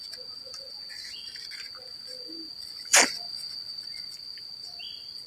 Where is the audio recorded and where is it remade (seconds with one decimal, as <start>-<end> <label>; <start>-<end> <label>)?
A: 0.0-1.9 recorded; 1.9-5.3 remade